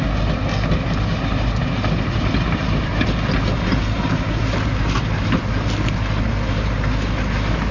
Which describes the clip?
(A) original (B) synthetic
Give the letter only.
A